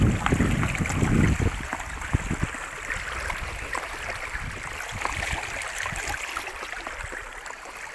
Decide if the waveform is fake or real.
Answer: real